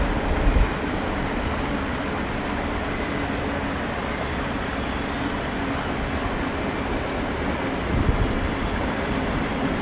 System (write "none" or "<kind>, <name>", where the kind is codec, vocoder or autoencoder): none